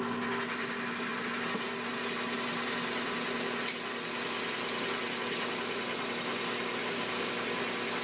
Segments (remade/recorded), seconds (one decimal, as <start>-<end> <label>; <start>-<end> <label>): 0.0-6.8 recorded; 6.8-7.3 remade; 7.3-8.0 recorded